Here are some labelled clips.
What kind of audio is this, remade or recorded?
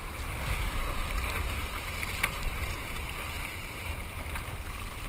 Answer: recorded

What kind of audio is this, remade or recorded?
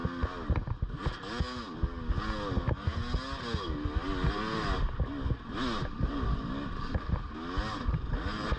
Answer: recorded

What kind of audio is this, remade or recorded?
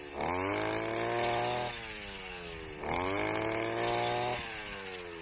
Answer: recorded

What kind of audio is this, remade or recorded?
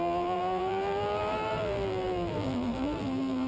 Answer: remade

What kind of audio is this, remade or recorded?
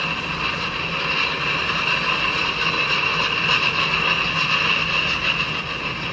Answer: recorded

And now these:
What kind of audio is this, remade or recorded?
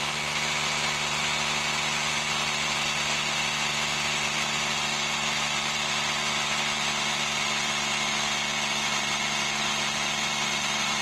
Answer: recorded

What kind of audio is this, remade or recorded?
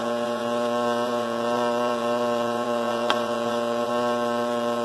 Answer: remade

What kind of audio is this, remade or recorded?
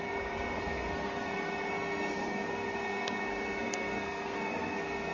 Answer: remade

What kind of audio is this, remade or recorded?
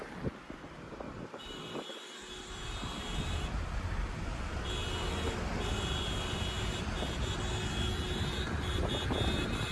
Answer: recorded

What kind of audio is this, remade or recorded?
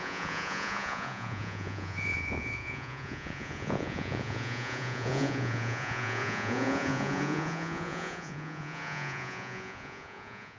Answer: remade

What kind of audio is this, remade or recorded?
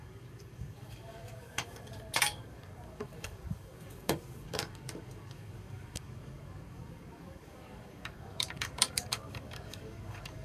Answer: remade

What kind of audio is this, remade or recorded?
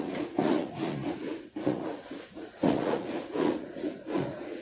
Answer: remade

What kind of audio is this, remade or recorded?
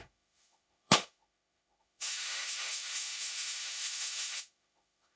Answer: remade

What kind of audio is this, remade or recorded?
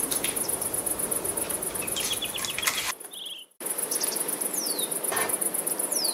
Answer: recorded